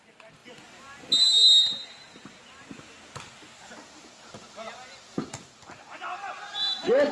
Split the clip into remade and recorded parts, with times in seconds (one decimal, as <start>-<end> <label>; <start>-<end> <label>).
0.0-7.1 recorded